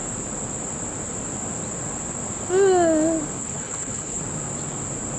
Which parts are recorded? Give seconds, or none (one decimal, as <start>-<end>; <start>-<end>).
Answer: 0.0-3.4; 4.2-5.2